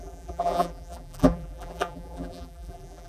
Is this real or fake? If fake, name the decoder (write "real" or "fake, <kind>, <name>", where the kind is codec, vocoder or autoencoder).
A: fake, vocoder, BigVGAN v2